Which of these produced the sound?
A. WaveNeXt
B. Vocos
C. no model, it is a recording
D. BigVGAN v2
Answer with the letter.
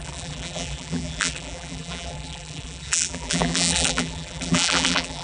D